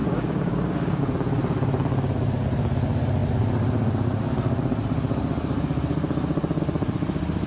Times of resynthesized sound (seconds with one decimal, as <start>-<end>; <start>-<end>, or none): 0.0-1.0